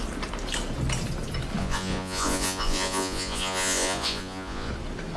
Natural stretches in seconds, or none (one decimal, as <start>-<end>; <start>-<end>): 0.0-1.6; 4.7-5.2